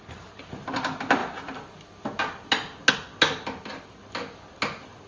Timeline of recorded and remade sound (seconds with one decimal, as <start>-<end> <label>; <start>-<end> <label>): 0.0-5.1 recorded